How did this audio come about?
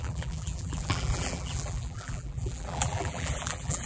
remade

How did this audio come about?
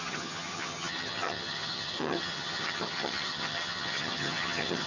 remade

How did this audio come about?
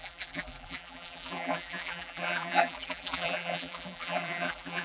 remade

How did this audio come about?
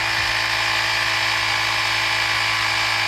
recorded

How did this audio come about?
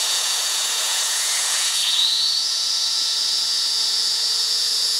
remade